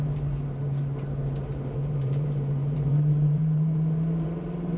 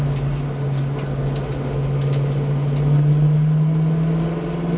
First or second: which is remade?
first